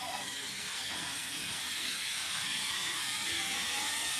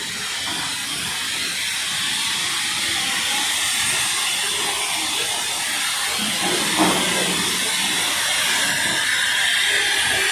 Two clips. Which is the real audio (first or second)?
second